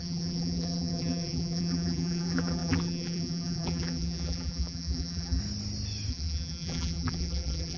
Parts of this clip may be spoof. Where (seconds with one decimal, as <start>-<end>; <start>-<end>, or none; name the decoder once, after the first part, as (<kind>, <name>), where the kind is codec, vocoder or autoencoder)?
0.0-5.4 (vocoder, BigVGAN v2); 6.1-7.8

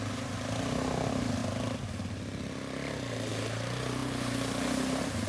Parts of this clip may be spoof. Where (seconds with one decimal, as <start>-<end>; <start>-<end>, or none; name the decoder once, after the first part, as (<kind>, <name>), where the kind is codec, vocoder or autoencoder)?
none

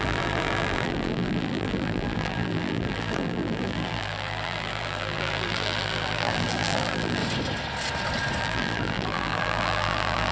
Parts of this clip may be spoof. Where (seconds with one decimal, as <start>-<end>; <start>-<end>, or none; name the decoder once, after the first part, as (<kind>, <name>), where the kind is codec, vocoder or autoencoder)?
0.0-7.2 (vocoder, BigVGAN v2); 8.4-10.3

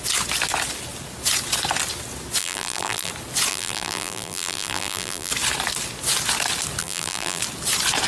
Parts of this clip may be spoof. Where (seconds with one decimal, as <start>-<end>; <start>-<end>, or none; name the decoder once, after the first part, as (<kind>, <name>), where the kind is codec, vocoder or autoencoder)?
2.4-3.1 (vocoder, BigVGAN v2); 3.5-5.3; 6.8-7.4

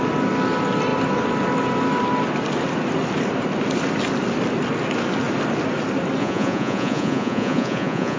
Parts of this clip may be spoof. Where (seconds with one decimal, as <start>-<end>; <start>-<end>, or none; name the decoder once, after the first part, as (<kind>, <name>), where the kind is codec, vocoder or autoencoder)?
6.2-8.2 (vocoder, Vocos)